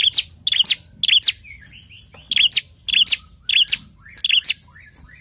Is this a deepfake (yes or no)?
no